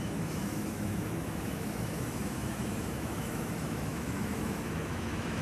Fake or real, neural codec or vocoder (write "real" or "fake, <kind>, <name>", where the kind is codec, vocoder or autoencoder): fake, autoencoder, DAC-VAE